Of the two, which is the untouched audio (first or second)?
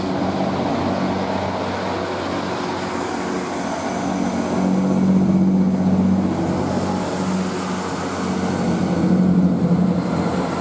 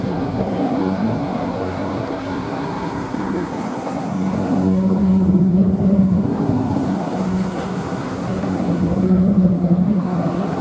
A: first